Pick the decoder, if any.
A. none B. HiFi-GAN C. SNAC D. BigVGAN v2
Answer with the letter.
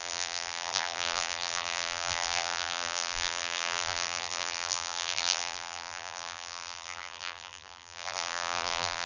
D